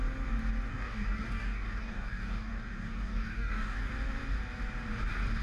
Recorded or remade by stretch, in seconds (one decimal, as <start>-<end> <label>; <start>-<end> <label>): 0.0-0.7 recorded; 0.7-3.9 remade; 3.9-5.4 recorded